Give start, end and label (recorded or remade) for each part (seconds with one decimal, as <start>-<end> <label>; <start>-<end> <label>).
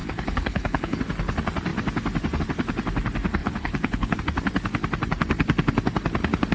0.0-1.0 remade; 1.0-3.4 recorded; 3.4-4.2 remade; 4.2-6.5 recorded